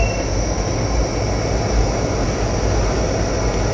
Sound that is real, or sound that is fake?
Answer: real